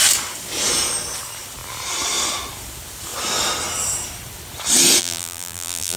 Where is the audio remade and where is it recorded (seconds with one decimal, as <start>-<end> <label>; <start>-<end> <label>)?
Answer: 0.0-5.0 recorded; 5.0-6.0 remade